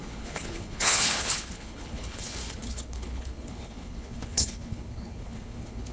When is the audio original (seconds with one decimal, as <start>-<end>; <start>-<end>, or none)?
none